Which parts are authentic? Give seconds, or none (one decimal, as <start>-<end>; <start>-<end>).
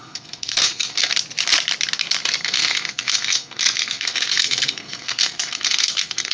1.1-2.4